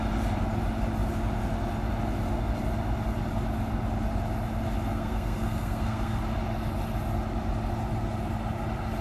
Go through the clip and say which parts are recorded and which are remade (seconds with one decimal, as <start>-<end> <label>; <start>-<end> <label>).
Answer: 0.0-4.9 recorded; 4.9-6.2 remade; 6.2-9.0 recorded